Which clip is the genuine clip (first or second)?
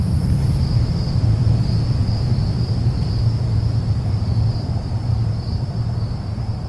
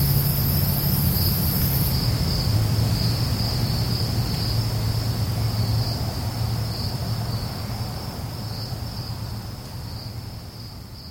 second